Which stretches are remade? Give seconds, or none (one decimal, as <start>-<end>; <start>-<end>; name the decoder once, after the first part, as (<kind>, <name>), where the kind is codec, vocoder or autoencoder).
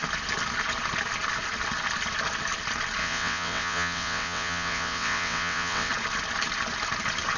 3.0-5.9 (vocoder, WaveNeXt)